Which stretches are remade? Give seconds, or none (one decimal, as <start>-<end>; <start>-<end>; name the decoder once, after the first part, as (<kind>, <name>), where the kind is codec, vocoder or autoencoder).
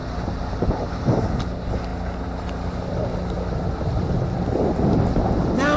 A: none